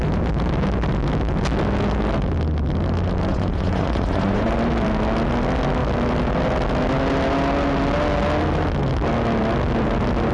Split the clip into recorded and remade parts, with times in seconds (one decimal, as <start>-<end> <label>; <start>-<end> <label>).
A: 0.0-3.3 recorded; 3.3-4.5 remade; 4.5-10.3 recorded